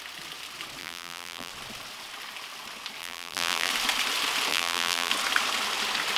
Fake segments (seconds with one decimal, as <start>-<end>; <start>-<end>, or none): 0.8-1.5; 3.0-3.7; 4.5-5.1